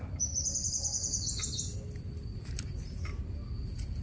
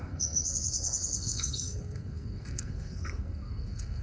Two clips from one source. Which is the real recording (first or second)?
first